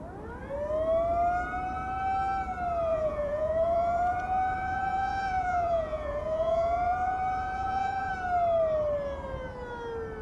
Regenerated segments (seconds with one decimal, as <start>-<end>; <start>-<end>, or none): 2.9-8.1